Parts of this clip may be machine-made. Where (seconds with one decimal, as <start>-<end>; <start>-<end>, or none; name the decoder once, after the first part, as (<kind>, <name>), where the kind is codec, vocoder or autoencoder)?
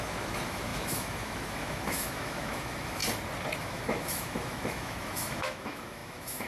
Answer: 0.0-3.0 (autoencoder, DAC-VAE); 3.6-6.5